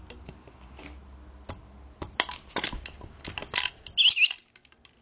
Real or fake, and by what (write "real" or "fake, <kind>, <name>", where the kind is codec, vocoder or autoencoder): real